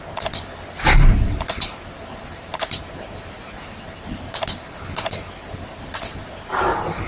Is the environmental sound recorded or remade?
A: recorded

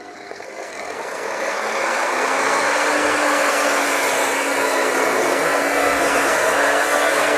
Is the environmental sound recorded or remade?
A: remade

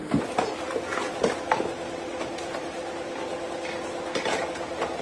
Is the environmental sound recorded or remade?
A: recorded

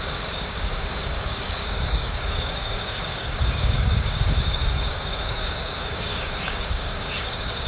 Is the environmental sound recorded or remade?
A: remade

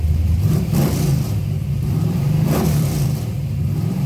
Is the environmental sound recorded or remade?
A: remade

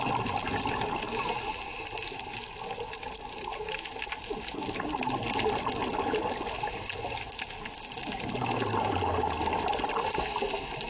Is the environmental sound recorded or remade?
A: recorded